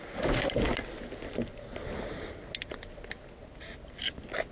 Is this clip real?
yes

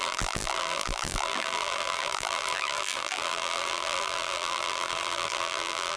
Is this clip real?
no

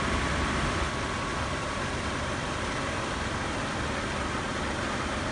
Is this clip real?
no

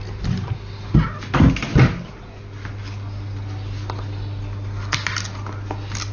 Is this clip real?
yes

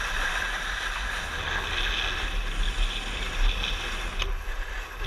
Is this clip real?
yes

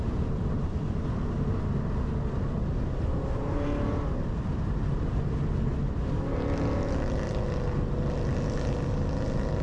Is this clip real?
yes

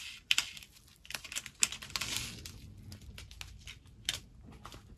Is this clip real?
yes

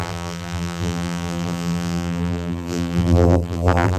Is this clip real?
no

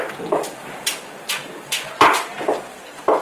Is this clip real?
yes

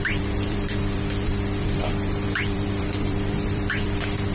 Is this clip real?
no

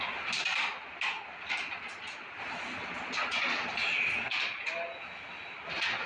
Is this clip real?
yes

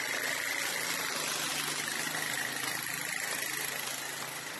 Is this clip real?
yes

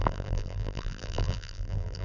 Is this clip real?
no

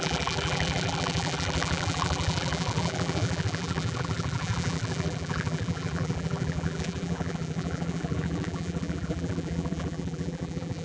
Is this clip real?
no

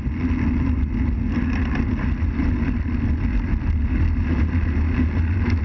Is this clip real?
yes